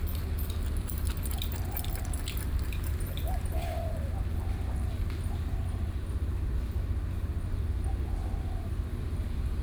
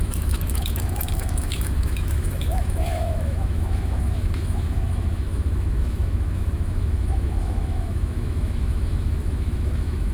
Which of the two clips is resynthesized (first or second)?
second